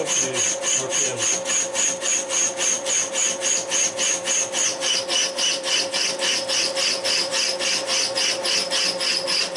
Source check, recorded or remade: recorded